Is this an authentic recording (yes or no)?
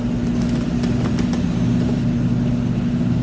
yes